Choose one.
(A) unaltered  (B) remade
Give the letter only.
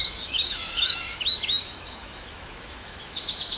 B